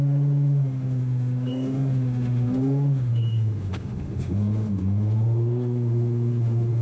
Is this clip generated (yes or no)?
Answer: yes